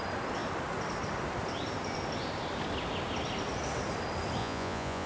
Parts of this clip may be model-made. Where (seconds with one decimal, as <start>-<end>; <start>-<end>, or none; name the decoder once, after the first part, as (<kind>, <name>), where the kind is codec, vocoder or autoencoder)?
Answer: 4.4-5.1 (vocoder, Vocos)